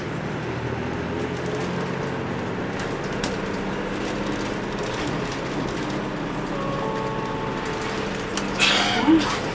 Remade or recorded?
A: recorded